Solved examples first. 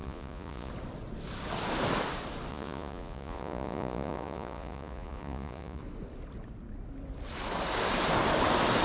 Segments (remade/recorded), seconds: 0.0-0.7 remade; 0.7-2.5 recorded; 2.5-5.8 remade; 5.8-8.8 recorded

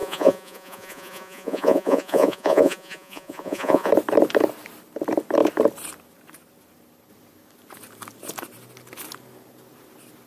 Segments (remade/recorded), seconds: 0.0-3.9 remade; 3.9-10.3 recorded